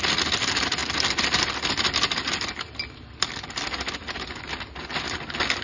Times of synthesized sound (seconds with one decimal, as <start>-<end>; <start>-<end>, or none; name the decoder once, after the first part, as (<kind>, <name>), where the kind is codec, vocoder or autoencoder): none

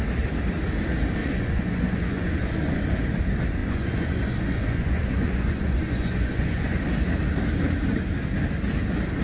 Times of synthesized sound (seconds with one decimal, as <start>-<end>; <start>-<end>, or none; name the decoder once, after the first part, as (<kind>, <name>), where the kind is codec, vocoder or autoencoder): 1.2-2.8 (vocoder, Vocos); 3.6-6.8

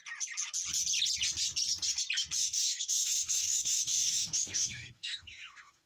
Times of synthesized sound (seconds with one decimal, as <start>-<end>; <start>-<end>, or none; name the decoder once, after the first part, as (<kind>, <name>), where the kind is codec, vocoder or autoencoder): 2.4-5.9 (autoencoder, DAC-VAE)

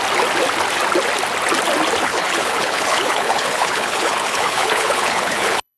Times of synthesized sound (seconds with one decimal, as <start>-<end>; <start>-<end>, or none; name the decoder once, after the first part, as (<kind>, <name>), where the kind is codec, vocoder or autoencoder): 2.0-5.8 (codec, HILCodec)

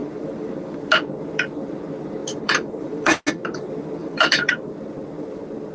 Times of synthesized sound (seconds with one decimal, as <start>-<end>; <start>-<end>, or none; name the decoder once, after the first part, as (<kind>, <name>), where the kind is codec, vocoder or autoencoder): 0.0-0.9 (vocoder, BigVGAN v2); 2.2-3.2; 4.0-4.7